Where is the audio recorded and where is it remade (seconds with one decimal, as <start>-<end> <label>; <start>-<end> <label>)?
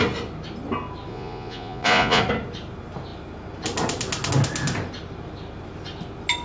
0.0-1.1 recorded; 1.1-2.2 remade; 2.2-6.4 recorded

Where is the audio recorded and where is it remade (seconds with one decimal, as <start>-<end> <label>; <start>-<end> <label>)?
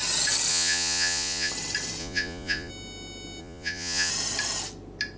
0.0-0.5 recorded; 0.5-1.5 remade; 1.5-2.0 recorded; 2.0-2.7 remade; 2.7-3.4 recorded; 3.4-4.1 remade; 4.1-5.2 recorded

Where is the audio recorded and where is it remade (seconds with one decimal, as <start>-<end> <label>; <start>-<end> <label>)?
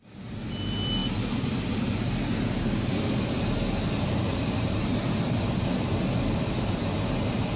0.0-7.6 recorded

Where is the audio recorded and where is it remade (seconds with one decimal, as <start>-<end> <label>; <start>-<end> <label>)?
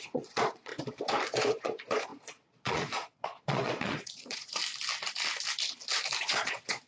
0.0-0.7 remade; 0.7-1.4 recorded; 1.4-4.6 remade; 4.6-6.2 recorded; 6.2-6.9 remade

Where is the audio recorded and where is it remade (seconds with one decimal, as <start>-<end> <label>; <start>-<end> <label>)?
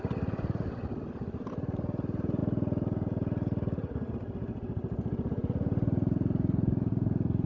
0.0-7.5 recorded